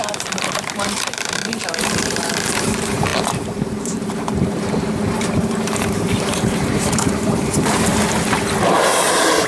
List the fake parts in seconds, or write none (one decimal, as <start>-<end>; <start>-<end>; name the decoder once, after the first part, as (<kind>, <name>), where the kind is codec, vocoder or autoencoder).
0.0-7.9 (vocoder, BigVGAN v2); 9.1-9.5